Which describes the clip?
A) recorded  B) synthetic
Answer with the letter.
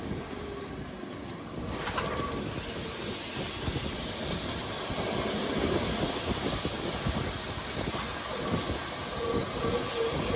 A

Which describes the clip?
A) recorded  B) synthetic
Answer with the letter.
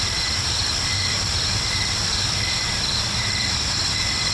A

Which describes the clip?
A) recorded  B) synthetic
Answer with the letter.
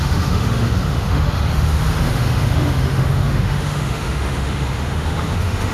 B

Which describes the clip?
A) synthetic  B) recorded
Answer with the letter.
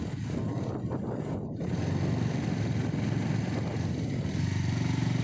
B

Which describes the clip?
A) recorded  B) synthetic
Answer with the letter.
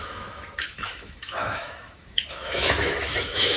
B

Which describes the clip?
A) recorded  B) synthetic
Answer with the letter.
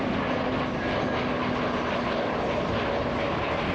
A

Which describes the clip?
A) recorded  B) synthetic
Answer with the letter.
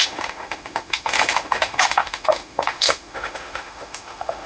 B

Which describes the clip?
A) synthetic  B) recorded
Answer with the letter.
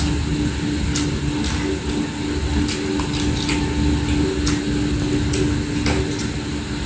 B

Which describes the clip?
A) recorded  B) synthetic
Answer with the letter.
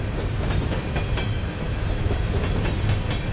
A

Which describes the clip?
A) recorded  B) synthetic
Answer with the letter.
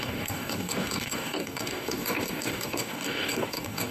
B